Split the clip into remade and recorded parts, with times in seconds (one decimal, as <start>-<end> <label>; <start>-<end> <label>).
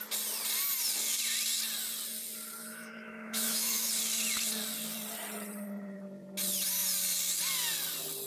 0.0-2.6 recorded; 2.6-3.9 remade; 3.9-8.3 recorded